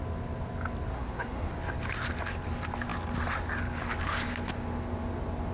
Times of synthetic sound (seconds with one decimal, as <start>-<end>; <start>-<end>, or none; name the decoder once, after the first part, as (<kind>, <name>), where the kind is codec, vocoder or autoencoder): 0.9-1.5 (codec, SNAC)